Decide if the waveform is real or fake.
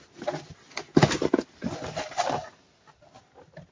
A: real